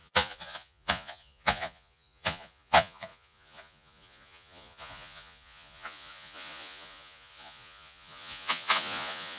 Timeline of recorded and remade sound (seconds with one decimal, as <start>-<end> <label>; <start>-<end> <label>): 0.0-9.4 remade